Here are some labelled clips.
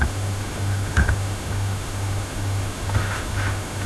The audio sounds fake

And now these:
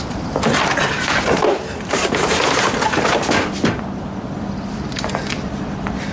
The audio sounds real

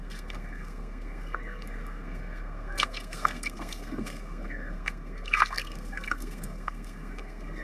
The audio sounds fake